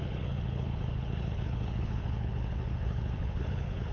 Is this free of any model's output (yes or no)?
no